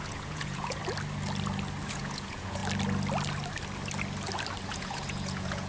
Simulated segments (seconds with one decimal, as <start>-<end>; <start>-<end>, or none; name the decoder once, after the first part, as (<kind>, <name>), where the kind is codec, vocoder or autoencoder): 0.0-0.8 (vocoder, Vocos); 1.9-2.6; 4.7-5.7

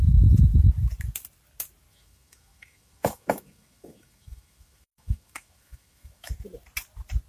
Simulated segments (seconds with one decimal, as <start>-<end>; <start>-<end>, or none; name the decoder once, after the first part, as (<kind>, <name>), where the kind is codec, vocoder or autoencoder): 1.9-6.3 (autoencoder, DAC-VAE)

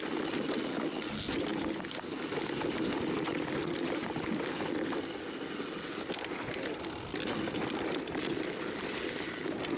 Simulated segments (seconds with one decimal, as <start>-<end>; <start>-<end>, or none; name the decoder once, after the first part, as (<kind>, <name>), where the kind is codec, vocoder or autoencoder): none

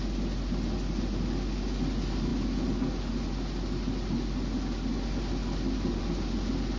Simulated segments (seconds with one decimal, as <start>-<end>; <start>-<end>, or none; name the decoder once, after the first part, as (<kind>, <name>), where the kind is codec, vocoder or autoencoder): none

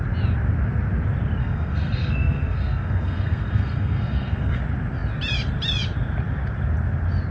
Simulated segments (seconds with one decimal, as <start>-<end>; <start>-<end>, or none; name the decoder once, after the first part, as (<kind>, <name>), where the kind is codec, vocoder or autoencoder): 1.4-4.6 (codec, SNAC)

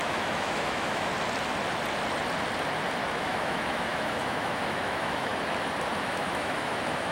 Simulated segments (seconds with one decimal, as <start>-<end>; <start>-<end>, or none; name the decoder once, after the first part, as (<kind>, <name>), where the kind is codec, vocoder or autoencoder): 0.0-1.1 (autoencoder, DAC-VAE); 3.1-5.3; 6.0-7.1

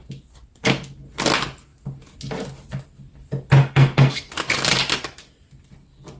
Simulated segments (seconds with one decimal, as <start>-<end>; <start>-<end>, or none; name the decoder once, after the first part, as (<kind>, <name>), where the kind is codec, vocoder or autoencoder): 3.6-4.3 (codec, SNAC)

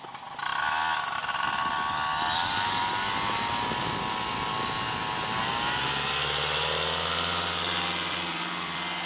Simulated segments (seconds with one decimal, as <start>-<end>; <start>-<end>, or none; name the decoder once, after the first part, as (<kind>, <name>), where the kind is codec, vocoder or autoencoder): 0.0-0.5 (vocoder, BigVGAN v2); 1.1-9.1